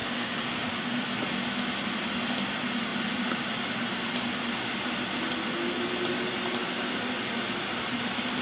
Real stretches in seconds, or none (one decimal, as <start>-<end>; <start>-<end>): 1.1-8.4